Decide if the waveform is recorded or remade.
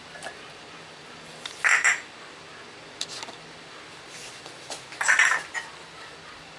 recorded